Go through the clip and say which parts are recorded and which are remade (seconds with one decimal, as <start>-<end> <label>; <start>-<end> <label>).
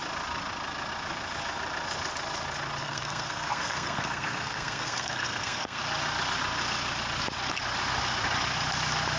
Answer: 0.0-2.8 recorded; 2.8-5.8 remade; 5.8-9.2 recorded